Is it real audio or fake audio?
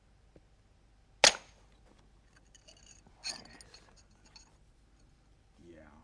real